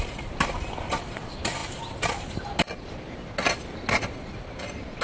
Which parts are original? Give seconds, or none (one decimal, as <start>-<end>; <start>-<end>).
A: 0.0-5.0